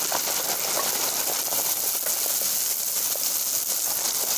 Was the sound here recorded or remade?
recorded